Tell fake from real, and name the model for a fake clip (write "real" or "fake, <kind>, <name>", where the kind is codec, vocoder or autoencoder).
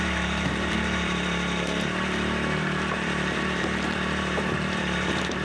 fake, vocoder, BigVGAN v2